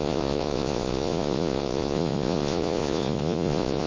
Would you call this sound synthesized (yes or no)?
yes